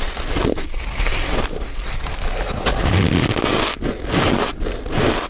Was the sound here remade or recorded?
recorded